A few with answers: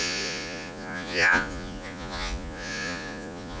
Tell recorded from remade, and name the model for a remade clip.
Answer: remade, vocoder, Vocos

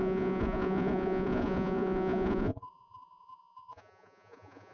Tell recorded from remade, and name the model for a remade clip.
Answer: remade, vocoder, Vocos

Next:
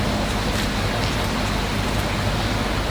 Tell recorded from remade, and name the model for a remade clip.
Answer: recorded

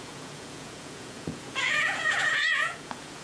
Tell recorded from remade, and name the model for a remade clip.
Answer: remade, vocoder, Vocos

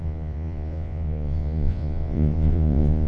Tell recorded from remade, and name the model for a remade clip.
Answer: remade, vocoder, Vocos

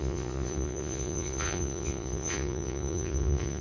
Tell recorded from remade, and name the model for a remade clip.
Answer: remade, vocoder, Vocos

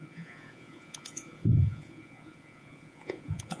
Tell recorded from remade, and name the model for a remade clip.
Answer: remade, vocoder, Vocos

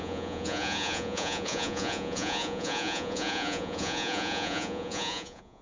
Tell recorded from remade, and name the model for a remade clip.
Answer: remade, vocoder, Vocos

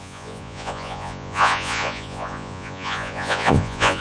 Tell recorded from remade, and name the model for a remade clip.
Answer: remade, vocoder, Vocos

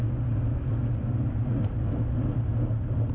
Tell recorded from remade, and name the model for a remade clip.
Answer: recorded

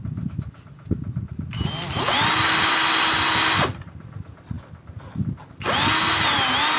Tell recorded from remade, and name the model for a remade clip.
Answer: recorded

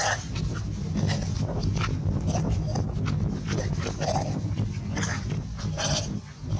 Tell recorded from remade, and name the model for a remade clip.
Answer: recorded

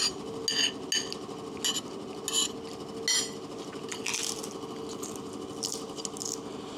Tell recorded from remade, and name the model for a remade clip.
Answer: recorded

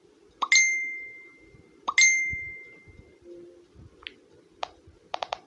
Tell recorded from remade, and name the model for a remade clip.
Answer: recorded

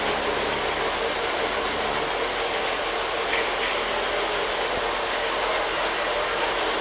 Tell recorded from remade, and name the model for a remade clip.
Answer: recorded